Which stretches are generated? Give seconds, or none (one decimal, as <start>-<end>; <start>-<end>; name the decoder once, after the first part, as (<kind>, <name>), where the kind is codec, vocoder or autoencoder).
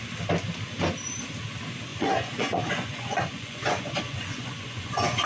1.9-5.3 (vocoder, Vocos)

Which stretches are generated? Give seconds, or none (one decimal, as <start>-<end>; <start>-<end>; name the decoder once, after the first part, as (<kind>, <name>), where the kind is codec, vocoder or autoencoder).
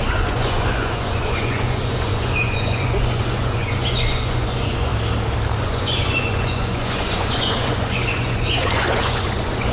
0.0-4.9 (vocoder, Vocos); 5.6-9.7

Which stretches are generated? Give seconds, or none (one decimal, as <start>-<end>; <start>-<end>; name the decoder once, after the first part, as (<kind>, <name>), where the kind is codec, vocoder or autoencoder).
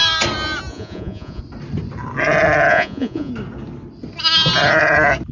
0.7-1.4 (vocoder, Vocos); 2.7-3.3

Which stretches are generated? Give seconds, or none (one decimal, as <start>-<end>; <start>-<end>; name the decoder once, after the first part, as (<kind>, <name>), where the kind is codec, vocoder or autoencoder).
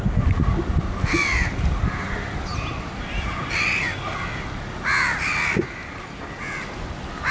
none